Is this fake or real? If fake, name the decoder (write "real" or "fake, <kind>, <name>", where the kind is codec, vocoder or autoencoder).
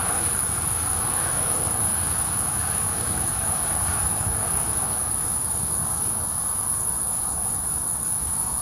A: fake, codec, DAC